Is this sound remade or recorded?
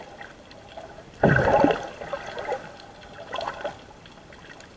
recorded